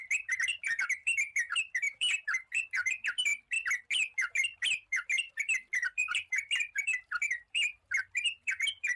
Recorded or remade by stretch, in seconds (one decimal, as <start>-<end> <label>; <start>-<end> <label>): 0.0-3.3 remade; 3.3-3.9 recorded; 3.9-9.0 remade